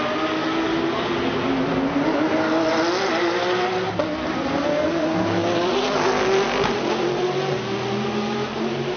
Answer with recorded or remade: recorded